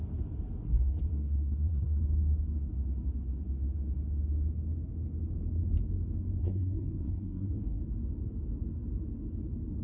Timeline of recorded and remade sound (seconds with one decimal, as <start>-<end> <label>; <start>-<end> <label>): 0.0-0.6 recorded; 0.6-2.0 remade; 2.0-6.4 recorded; 6.4-7.8 remade; 7.8-9.8 recorded